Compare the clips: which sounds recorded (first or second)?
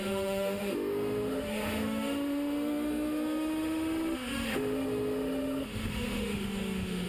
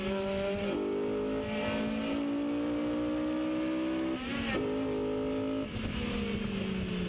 second